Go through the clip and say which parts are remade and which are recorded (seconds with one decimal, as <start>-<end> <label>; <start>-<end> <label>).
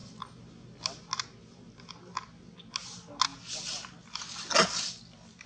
0.0-5.5 recorded